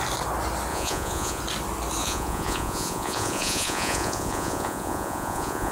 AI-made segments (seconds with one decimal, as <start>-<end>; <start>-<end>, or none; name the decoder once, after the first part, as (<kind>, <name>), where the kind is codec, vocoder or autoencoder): 0.7-1.4 (vocoder, Vocos); 2.0-5.7